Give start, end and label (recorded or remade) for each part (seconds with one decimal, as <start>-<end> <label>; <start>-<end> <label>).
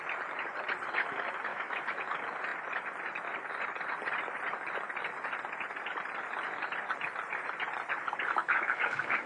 0.0-1.5 recorded; 1.5-2.0 remade; 2.0-8.4 recorded; 8.4-9.3 remade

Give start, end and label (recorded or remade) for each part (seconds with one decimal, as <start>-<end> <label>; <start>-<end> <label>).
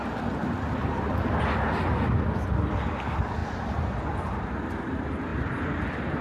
0.0-5.3 recorded; 5.3-6.2 remade